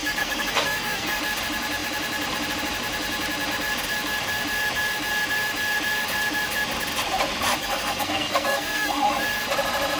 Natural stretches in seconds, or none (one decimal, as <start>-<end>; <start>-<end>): 1.2-7.6; 9.2-10.0